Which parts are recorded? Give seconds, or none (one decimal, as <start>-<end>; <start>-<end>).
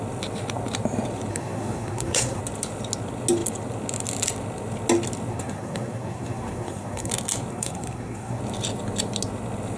0.0-1.3; 2.4-5.3; 7.1-7.5; 8.4-9.8